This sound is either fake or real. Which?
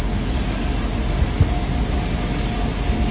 real